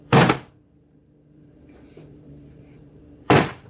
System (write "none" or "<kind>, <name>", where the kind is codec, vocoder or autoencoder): vocoder, BigVGAN v2